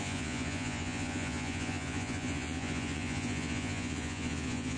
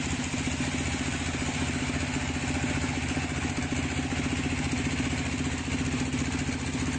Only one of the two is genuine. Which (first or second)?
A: second